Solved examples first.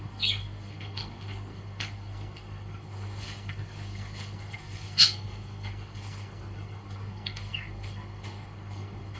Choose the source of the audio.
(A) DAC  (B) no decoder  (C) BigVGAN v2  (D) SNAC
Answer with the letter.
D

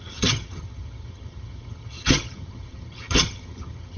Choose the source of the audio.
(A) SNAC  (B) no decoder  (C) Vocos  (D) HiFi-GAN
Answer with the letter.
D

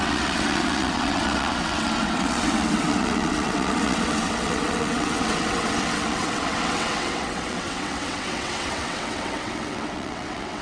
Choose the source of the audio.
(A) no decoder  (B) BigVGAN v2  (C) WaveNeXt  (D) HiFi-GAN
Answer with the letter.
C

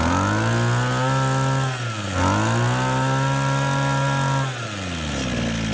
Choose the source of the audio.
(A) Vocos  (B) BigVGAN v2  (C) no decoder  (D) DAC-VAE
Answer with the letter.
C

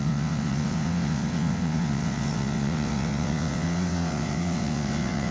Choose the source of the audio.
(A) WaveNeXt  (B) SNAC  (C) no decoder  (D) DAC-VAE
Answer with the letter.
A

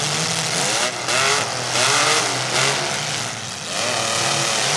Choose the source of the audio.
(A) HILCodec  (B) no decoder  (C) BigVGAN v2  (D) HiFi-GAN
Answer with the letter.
B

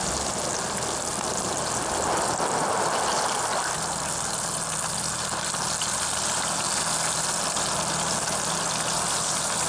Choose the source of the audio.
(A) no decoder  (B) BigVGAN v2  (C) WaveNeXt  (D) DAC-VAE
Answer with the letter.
A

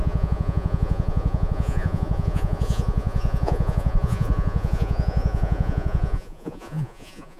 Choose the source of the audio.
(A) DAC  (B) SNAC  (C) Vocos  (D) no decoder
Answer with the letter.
C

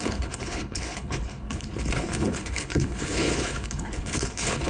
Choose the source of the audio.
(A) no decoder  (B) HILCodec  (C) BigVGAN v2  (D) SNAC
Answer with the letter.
B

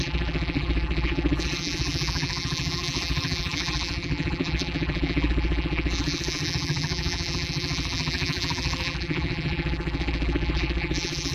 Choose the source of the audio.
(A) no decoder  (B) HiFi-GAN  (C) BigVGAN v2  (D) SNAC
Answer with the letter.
C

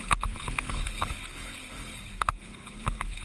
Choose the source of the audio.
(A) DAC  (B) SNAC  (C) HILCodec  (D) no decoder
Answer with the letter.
C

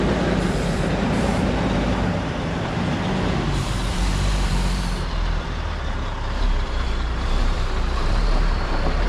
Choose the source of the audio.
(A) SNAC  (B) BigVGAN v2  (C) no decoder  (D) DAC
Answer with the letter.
B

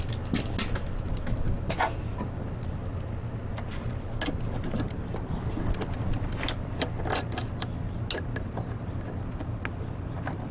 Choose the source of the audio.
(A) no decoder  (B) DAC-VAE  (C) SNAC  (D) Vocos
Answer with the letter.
A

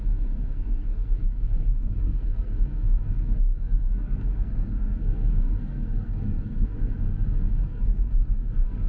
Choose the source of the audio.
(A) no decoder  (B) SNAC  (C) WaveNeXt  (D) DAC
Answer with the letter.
B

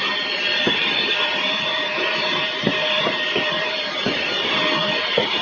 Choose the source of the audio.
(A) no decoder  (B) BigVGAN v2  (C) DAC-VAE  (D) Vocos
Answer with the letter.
B